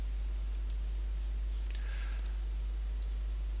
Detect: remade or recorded recorded